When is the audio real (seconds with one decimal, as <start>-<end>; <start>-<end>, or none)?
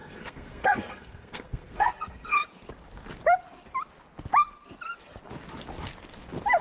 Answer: 2.4-6.6